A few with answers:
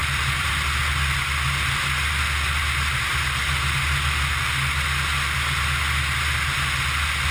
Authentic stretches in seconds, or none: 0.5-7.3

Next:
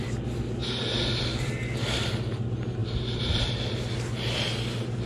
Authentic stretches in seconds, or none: 0.0-2.8; 3.5-5.1

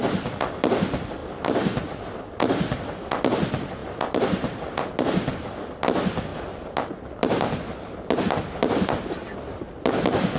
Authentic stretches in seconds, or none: 0.0-1.2; 1.8-3.8; 5.7-10.4

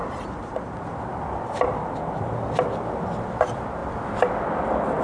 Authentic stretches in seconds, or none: 3.0-5.0

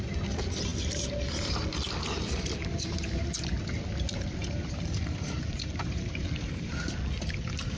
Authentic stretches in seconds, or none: 0.0-4.4; 6.7-7.8